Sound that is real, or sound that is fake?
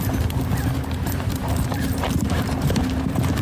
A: fake